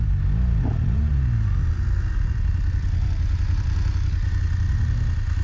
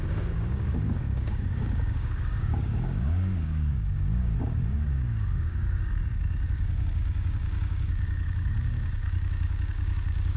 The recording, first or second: first